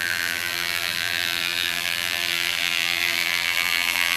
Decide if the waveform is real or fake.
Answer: fake